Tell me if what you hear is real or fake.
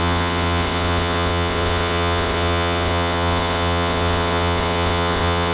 fake